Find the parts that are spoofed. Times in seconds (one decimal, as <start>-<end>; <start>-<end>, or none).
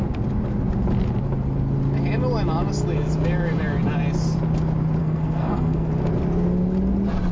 5.0-5.9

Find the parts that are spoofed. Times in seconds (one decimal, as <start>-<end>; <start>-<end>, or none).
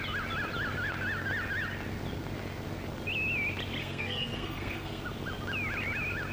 3.8-5.0